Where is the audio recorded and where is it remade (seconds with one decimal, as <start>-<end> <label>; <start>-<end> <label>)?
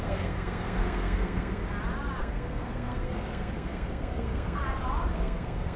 0.0-1.6 remade; 1.6-2.2 recorded; 2.2-4.6 remade; 4.6-5.1 recorded; 5.1-5.8 remade